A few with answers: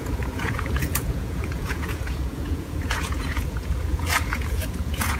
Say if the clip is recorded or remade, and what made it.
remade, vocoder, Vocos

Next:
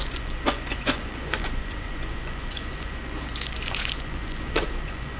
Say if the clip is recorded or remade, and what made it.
remade, vocoder, Vocos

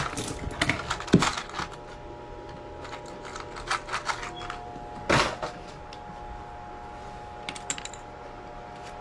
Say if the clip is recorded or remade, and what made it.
recorded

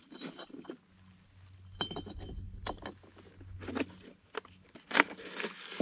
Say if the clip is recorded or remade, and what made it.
recorded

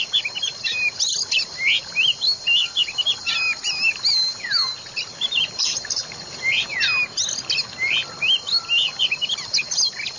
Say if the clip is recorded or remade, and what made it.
recorded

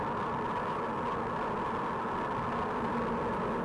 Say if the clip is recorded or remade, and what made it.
recorded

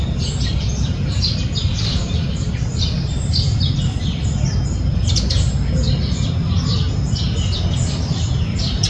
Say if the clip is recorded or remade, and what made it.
recorded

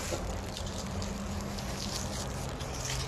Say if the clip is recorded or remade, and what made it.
recorded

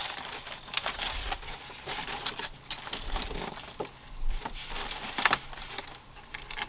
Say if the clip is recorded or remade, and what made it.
recorded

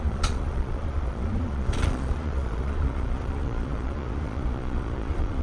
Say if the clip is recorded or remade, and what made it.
remade, vocoder, Vocos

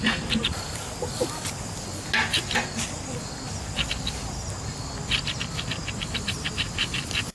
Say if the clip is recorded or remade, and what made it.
recorded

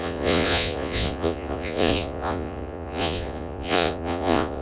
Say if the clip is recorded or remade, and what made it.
remade, vocoder, Vocos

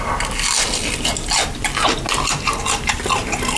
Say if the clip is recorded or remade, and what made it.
recorded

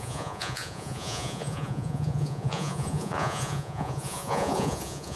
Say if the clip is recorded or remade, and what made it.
remade, vocoder, Vocos